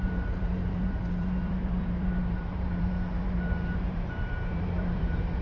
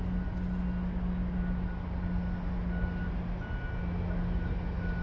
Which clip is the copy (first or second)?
first